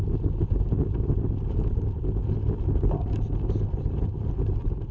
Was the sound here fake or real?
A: real